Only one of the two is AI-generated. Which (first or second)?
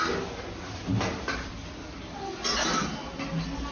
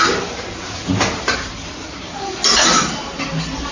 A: second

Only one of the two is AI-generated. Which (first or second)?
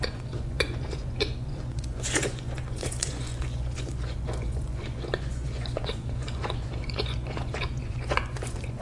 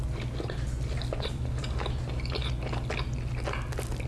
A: first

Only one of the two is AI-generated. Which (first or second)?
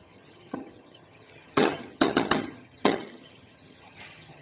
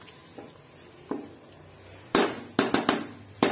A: first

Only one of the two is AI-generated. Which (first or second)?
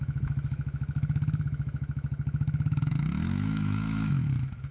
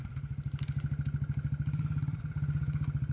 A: first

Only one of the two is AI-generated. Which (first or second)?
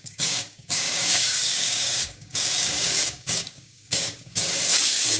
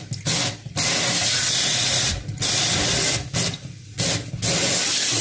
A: first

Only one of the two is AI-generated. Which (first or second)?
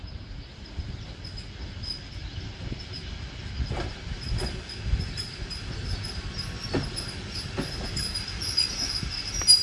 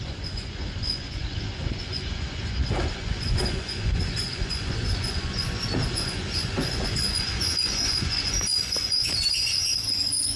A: second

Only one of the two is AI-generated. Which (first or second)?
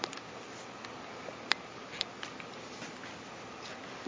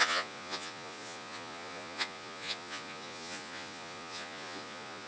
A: second